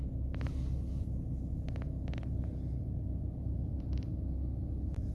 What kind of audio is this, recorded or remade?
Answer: recorded